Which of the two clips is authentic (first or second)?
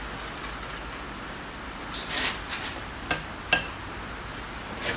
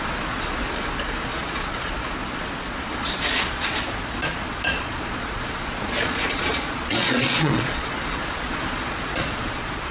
first